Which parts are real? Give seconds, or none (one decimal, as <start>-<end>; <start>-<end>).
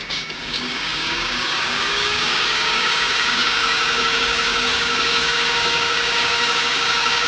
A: none